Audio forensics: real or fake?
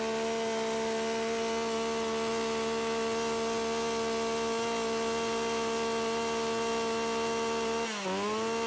real